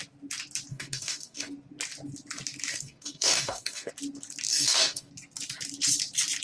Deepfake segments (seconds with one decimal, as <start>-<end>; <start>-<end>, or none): 0.7-1.5; 2.7-3.9; 4.5-5.1